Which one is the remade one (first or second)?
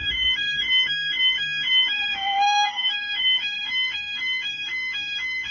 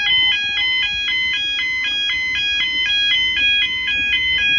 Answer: first